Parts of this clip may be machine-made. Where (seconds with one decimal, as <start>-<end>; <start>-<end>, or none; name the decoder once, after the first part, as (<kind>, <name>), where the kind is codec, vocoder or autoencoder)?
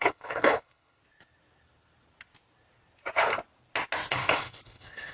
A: 0.0-1.0 (codec, HILCodec); 4.1-5.1